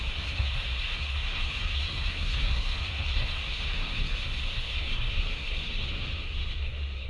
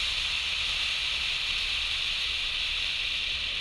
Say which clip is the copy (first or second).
first